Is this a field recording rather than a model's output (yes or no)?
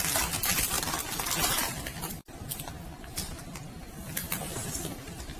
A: yes